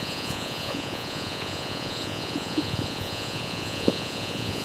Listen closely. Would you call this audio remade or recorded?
remade